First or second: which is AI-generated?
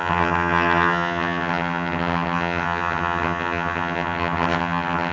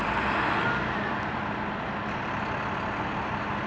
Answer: first